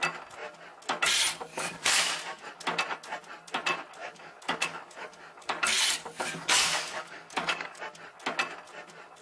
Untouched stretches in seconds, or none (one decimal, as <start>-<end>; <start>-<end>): 0.0-1.5; 2.1-4.0; 7.8-9.2

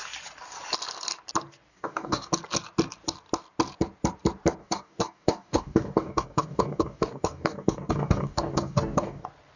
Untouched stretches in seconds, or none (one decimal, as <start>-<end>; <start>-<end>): 0.0-1.7; 2.3-4.6; 9.2-9.6

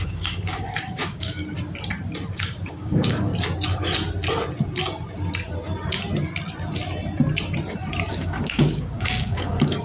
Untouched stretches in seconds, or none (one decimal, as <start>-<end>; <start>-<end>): 1.4-2.3; 3.3-8.1

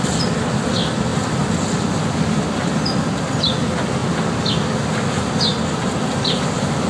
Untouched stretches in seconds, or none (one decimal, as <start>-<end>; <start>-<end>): 0.0-6.9